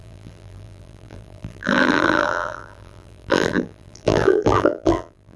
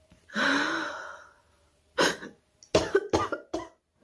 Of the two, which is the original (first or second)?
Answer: second